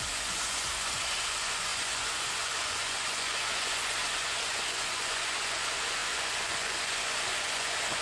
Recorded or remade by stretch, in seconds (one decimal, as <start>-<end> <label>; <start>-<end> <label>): 0.0-8.0 remade